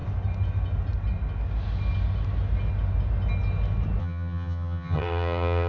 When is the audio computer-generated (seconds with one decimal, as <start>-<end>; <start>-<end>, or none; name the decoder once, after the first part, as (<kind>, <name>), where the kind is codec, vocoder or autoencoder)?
4.0-5.7 (vocoder, HiFi-GAN)